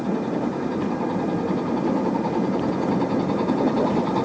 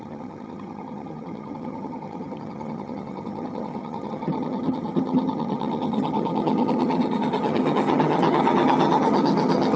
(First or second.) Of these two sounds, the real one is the first